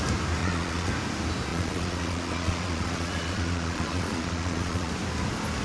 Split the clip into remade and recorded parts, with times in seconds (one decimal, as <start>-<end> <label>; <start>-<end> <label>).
0.0-0.4 recorded; 0.4-0.9 remade; 0.9-1.5 recorded; 1.5-4.9 remade; 4.9-5.6 recorded